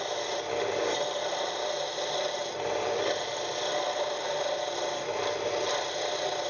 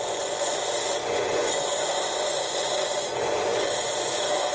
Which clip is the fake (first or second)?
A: second